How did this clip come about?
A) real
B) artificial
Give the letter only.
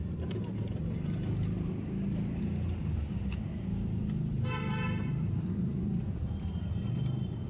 A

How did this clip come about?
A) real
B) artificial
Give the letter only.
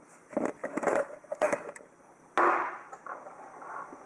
A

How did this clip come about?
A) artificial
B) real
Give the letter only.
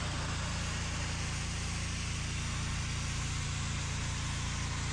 B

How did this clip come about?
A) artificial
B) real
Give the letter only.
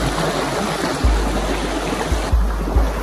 B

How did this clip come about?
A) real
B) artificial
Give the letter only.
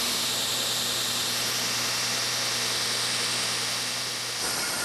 A